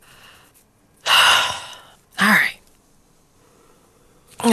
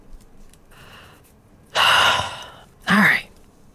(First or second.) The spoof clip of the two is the second